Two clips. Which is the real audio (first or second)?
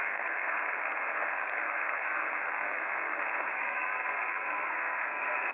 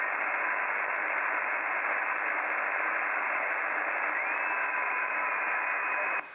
second